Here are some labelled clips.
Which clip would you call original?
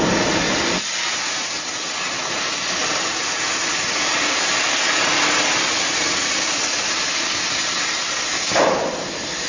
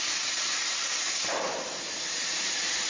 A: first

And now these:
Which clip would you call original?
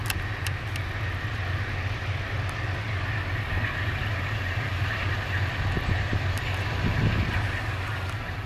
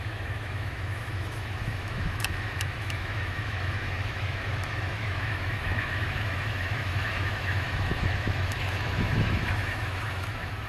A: first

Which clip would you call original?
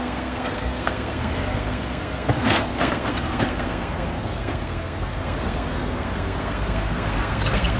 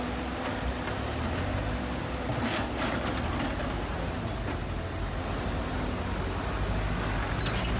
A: second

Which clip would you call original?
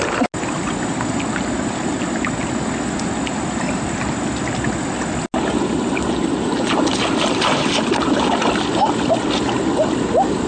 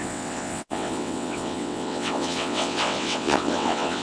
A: first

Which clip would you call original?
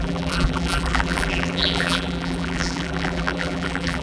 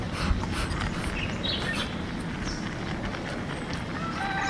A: second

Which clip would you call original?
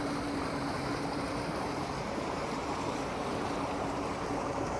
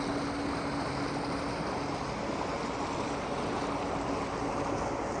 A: second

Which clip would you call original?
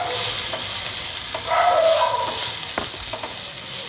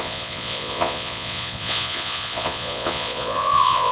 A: first